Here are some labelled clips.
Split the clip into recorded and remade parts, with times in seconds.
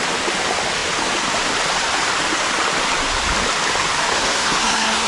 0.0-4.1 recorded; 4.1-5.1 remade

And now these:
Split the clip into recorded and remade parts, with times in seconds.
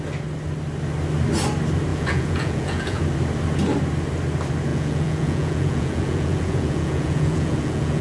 0.0-1.9 recorded; 1.9-3.0 remade; 3.0-4.7 recorded; 4.7-8.0 remade